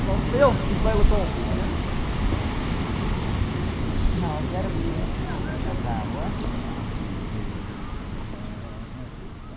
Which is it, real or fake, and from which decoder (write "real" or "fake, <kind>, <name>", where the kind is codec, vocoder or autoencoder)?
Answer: real